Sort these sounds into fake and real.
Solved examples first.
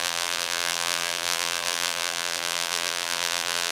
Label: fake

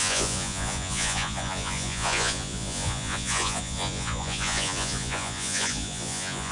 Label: fake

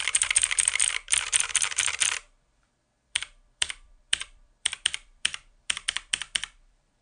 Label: fake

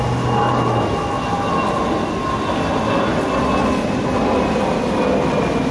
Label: real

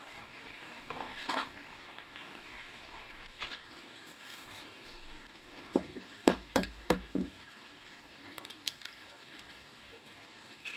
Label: fake